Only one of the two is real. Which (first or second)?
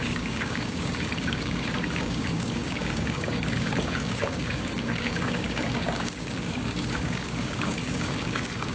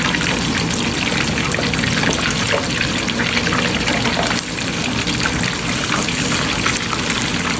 second